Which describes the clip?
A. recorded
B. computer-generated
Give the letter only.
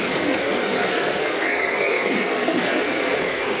B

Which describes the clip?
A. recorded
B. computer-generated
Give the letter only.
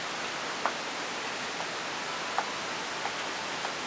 A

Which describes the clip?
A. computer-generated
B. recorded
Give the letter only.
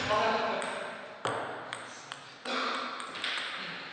B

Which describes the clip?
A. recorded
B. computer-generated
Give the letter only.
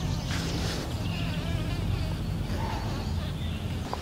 A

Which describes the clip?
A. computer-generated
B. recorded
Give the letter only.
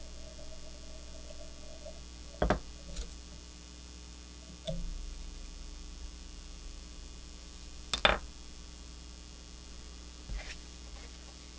B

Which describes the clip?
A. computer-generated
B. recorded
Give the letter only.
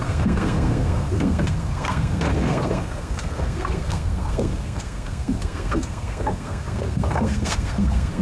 A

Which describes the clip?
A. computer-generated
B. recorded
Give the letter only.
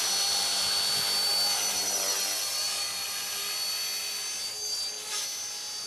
B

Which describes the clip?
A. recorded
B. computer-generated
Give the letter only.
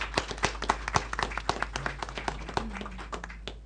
A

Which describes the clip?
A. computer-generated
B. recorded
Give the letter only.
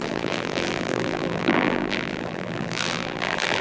A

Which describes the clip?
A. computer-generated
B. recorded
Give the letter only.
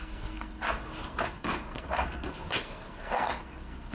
A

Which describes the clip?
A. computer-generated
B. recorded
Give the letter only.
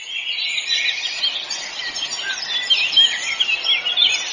B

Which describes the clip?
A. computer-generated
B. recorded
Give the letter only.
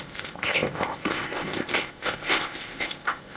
A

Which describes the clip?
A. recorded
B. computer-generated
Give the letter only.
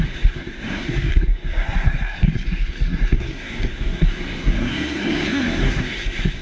B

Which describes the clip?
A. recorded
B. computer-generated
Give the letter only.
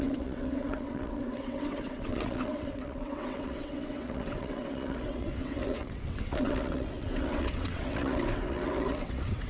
B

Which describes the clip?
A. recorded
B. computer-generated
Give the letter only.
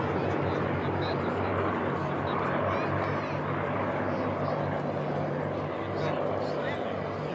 A